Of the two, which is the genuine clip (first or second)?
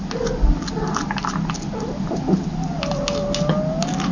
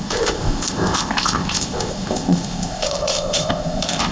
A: first